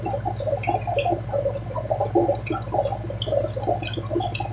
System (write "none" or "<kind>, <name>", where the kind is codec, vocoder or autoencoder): none